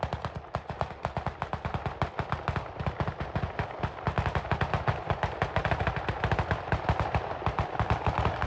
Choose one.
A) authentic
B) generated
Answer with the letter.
A